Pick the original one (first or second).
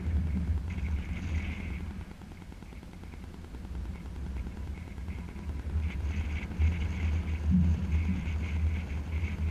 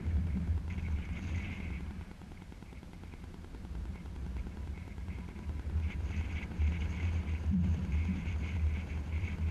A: first